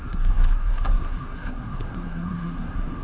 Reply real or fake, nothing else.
fake